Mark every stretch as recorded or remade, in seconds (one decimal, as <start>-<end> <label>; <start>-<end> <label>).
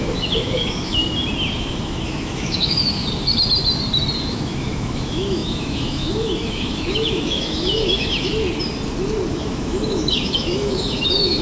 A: 0.0-1.0 remade; 1.0-1.6 recorded; 1.6-3.0 remade; 3.0-4.3 recorded; 4.3-8.3 remade; 8.3-9.3 recorded; 9.3-11.4 remade